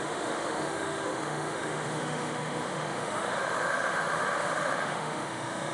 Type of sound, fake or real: fake